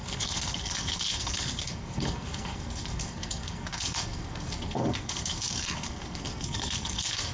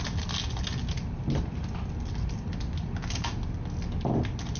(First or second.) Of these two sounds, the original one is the second